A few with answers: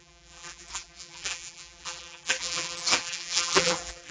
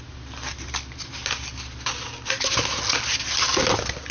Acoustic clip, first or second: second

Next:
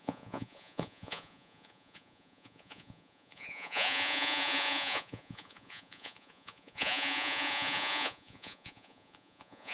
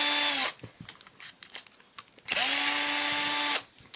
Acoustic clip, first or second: second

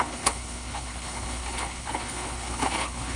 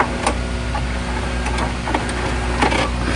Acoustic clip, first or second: second